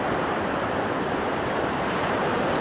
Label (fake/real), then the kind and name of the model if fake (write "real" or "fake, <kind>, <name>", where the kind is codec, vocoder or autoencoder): fake, vocoder, BigVGAN v2